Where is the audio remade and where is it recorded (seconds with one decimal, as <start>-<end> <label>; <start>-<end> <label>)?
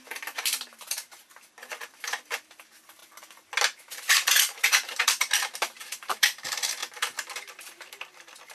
0.0-3.0 remade; 3.0-3.9 recorded; 3.9-6.8 remade; 6.8-7.6 recorded; 7.6-8.5 remade